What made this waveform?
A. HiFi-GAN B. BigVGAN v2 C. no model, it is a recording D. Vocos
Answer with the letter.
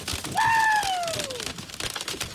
C